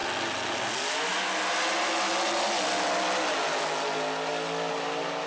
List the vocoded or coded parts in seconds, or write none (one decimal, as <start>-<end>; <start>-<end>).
none